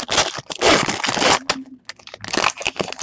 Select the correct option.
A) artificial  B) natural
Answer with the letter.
B